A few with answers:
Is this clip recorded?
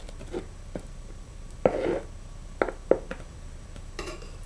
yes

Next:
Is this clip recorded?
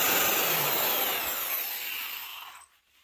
yes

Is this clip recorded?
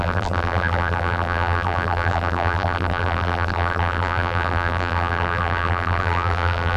no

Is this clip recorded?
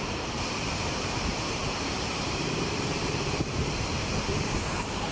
no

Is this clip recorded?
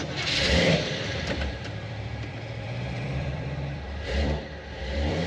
no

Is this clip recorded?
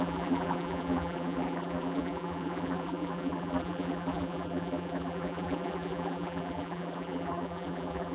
no